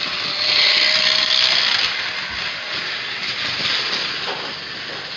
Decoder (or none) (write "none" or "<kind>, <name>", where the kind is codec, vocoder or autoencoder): none